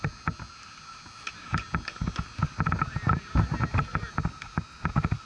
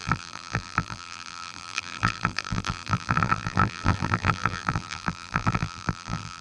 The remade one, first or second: second